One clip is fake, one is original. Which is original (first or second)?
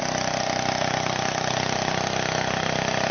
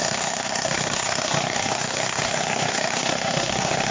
first